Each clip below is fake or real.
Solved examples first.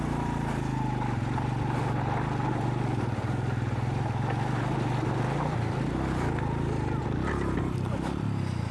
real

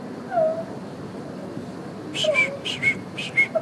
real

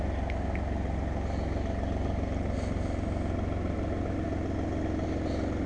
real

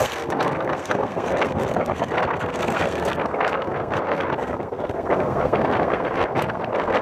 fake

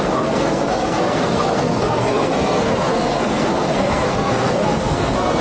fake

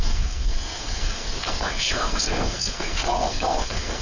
fake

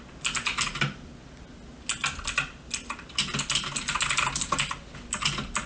real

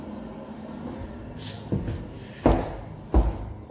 real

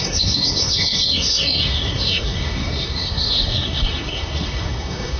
fake